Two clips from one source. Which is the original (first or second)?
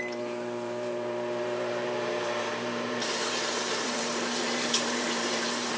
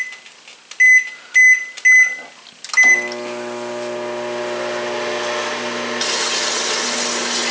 second